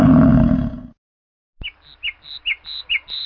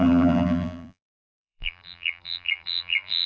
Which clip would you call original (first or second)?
first